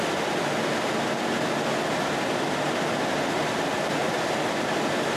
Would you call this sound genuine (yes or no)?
yes